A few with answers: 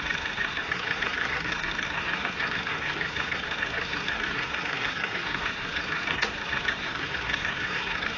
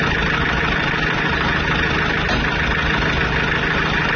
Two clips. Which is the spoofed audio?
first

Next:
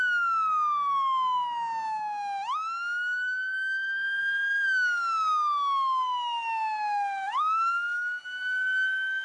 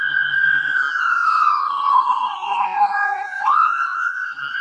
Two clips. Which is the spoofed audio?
second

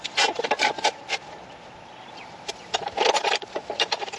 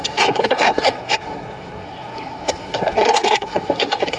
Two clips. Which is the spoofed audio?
second